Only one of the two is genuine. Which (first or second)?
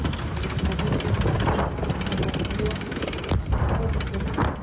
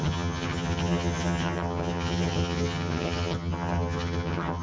first